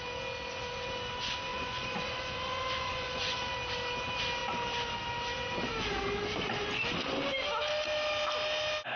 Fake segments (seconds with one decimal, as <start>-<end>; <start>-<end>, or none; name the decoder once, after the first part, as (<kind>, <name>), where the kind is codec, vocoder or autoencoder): 1.5-3.4 (vocoder, Vocos)